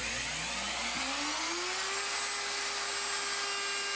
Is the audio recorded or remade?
recorded